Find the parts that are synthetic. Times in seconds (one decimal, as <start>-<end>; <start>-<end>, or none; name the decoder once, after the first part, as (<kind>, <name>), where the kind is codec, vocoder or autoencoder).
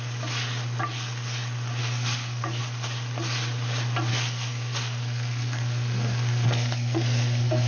1.8-2.6 (codec, SNAC); 4.1-7.7